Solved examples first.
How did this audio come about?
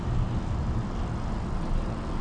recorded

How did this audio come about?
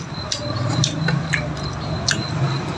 recorded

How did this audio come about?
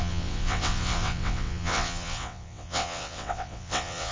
remade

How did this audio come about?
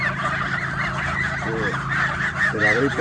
recorded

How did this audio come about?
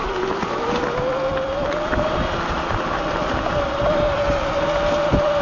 recorded